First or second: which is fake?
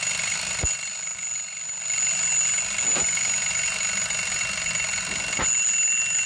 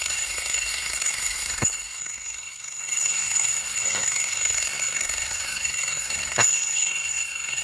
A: second